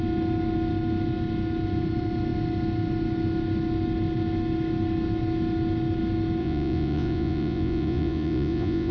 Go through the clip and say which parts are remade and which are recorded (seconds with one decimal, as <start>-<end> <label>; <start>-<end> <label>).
0.0-6.4 recorded; 6.4-8.9 remade